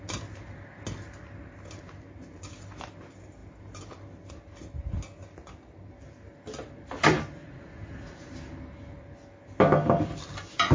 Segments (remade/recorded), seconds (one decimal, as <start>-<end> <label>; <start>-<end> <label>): 0.0-7.4 recorded; 7.4-8.2 remade; 8.2-10.7 recorded